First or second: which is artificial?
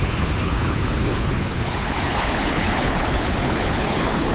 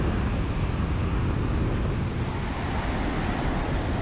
first